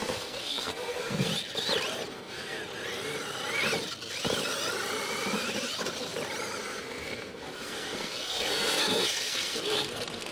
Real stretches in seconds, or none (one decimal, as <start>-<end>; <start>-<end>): 1.3-2.1; 2.6-6.6